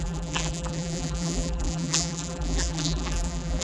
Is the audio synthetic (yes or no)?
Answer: yes